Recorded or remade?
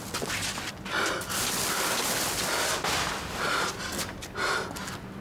recorded